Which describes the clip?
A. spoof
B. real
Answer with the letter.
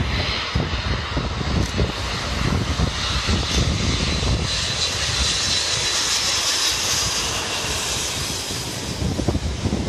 B